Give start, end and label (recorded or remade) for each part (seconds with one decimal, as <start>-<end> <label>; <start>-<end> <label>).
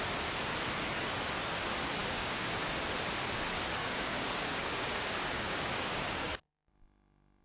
0.0-2.0 recorded; 2.0-2.7 remade; 2.7-3.8 recorded; 3.8-6.5 remade; 6.5-7.4 recorded